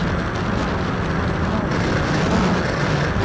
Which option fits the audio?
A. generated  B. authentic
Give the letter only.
B